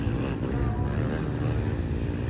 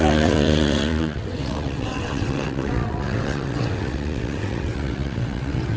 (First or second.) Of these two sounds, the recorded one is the first